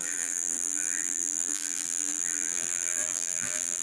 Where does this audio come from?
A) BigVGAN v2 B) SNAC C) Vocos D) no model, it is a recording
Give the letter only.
A